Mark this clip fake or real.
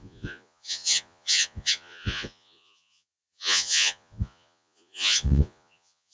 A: fake